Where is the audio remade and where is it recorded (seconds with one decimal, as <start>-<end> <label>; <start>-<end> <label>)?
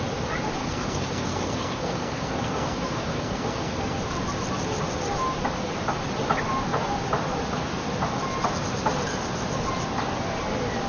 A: 0.0-0.6 recorded; 0.6-4.0 remade; 4.0-10.9 recorded